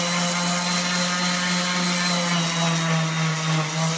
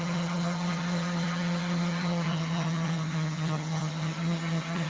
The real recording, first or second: first